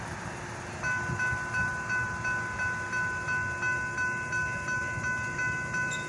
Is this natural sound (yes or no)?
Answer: yes